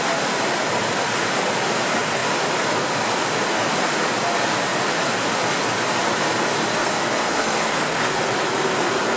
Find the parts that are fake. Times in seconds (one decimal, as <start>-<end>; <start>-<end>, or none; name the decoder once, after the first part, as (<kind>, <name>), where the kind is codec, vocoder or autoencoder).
6.7-8.2 (codec, SNAC)